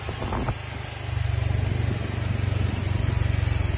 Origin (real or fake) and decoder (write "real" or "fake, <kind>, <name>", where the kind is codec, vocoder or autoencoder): real